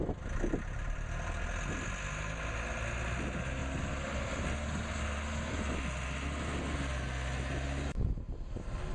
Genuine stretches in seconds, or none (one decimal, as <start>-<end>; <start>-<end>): 0.0-8.9